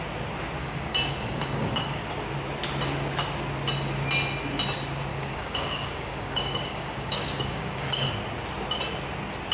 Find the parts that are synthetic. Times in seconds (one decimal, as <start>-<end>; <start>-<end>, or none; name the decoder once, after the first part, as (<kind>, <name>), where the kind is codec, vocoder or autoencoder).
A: 0.6-2.1 (codec, DAC); 5.1-8.1